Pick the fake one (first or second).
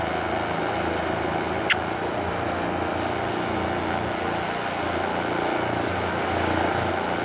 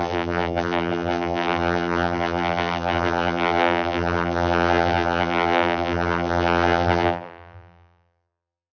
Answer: second